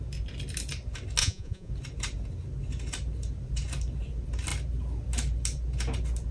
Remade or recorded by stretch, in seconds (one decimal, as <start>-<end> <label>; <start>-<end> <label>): 0.0-1.2 recorded; 1.2-1.7 remade; 1.7-6.3 recorded